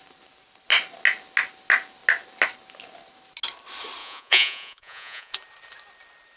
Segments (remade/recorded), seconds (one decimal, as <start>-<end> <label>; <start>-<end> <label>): 0.0-4.0 recorded; 4.0-5.3 remade; 5.3-6.4 recorded